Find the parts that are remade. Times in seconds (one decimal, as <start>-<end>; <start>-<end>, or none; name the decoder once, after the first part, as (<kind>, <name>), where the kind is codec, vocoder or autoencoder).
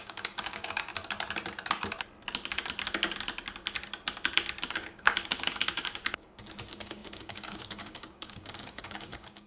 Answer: 0.0-0.9 (codec, DAC); 4.7-9.5